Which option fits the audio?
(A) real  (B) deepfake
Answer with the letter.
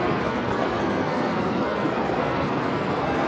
B